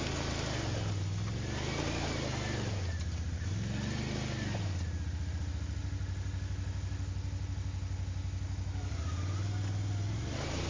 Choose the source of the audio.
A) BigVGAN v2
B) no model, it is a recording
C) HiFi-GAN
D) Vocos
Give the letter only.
B